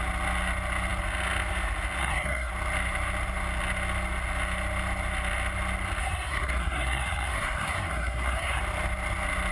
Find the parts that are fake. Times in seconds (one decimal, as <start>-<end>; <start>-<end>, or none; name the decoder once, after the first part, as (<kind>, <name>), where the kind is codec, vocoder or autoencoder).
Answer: 2.0-2.5 (codec, SNAC); 6.0-8.6